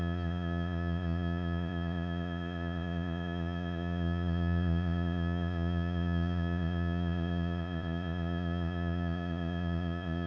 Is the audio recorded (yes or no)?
no